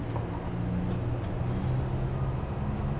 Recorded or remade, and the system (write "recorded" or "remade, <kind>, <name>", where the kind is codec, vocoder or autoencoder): recorded